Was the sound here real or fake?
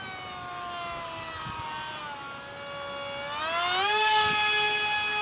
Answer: real